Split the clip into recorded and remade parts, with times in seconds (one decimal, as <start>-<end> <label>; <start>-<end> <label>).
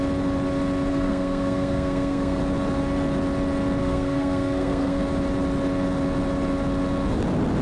0.0-0.9 recorded; 0.9-2.4 remade; 2.4-3.8 recorded; 3.8-5.0 remade; 5.0-7.6 recorded